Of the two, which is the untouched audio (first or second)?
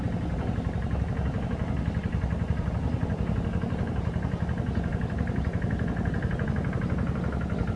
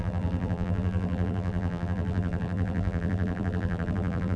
first